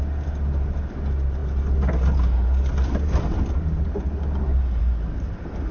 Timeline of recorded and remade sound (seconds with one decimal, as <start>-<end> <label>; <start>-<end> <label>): 0.0-5.7 recorded